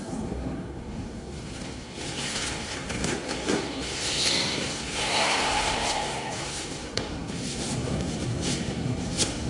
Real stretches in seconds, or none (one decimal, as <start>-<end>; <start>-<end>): none